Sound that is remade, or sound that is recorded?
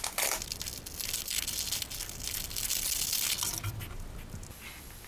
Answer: recorded